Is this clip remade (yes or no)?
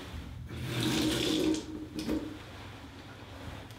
no